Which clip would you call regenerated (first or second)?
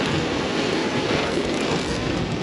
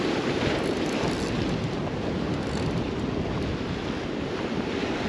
first